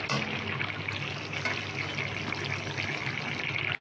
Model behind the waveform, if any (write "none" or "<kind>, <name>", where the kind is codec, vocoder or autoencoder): none